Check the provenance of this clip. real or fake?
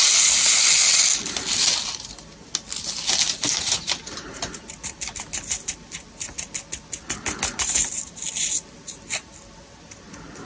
real